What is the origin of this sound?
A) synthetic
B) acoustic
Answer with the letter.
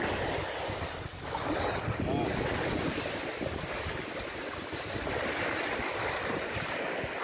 B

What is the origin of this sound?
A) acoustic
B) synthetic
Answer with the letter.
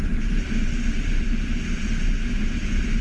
B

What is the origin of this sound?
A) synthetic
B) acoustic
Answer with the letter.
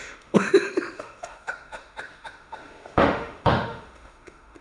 A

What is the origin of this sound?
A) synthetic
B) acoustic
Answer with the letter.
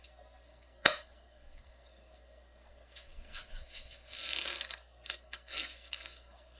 A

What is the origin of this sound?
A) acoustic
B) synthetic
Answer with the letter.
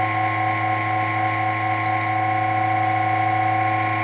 A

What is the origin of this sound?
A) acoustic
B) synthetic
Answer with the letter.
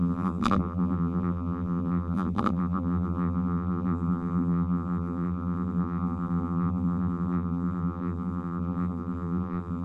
B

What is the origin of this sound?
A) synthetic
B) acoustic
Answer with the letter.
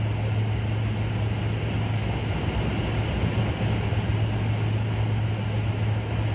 B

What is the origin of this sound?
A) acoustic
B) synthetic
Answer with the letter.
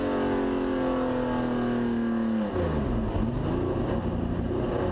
A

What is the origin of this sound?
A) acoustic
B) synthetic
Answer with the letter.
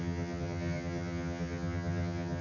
B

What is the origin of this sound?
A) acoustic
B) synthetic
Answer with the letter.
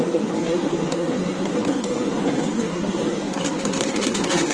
B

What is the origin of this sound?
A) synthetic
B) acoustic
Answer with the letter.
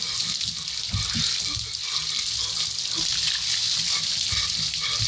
B